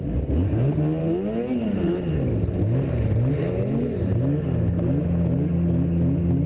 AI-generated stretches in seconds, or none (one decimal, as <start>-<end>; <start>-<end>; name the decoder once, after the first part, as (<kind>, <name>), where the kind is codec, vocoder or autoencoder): none